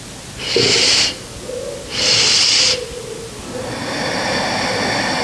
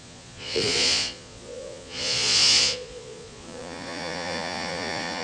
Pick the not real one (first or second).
second